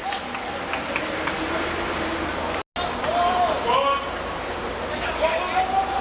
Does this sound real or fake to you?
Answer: real